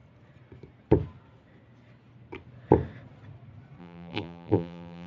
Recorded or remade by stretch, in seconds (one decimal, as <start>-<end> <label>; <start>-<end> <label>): 0.0-3.8 recorded; 3.8-5.1 remade